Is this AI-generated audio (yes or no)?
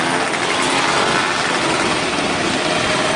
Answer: no